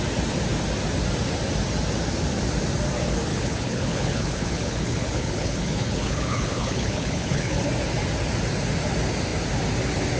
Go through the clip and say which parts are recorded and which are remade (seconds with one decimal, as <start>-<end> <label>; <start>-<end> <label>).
0.0-3.3 recorded; 3.3-7.7 remade; 7.7-10.2 recorded